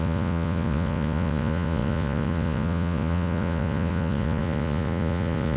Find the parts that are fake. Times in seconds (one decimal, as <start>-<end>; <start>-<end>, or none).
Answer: 0.0-5.6